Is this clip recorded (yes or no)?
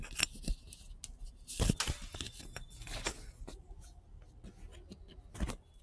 yes